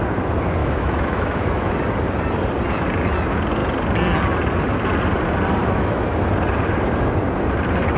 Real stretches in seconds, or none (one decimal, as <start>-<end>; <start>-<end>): 0.0-0.6; 1.7-5.6; 6.1-8.0